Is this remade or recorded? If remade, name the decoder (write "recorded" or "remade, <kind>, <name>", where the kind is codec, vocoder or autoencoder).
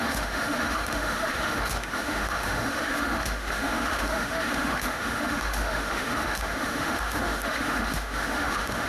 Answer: remade, autoencoder, DAC-VAE